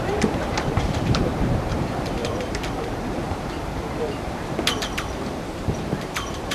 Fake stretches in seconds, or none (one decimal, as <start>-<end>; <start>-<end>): 0.0-6.5